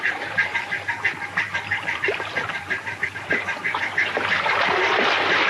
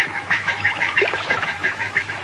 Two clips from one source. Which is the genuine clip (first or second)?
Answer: first